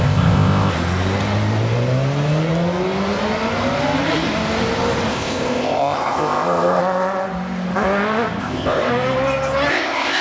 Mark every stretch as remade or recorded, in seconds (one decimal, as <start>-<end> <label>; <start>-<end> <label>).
0.0-0.7 remade; 0.7-5.1 recorded; 5.1-6.8 remade; 6.8-8.4 recorded; 8.4-8.9 remade; 8.9-9.7 recorded; 9.7-10.2 remade